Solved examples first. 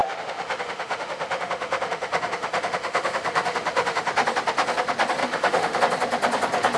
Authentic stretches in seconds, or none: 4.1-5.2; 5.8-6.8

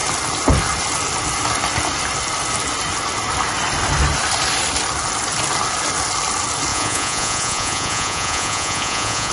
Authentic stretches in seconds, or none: 0.0-6.7

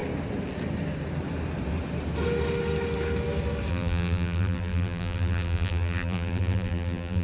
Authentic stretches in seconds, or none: 0.0-3.7

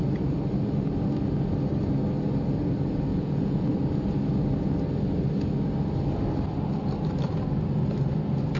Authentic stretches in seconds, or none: 0.0-3.1; 3.7-8.6